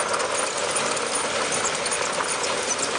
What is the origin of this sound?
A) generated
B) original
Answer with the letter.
B